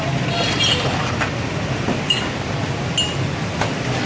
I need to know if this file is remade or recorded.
recorded